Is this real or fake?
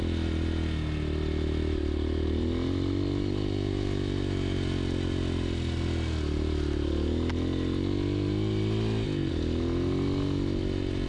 real